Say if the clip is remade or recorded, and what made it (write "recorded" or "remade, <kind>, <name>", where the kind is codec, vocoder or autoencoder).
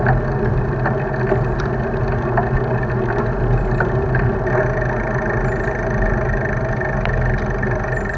recorded